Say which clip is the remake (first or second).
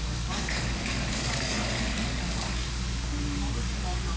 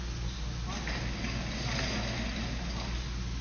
first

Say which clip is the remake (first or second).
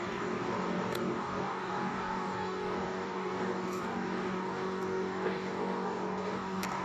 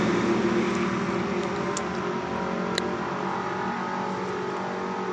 first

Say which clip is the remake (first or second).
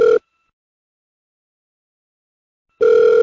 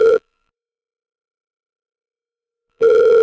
second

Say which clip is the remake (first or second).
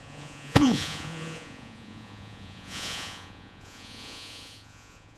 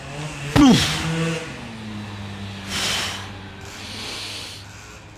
first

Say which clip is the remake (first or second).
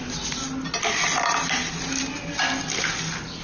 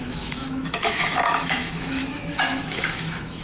second